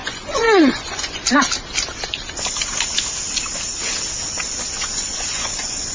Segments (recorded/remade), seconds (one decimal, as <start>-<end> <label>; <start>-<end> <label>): 0.0-1.2 remade; 1.2-4.7 recorded; 4.7-5.9 remade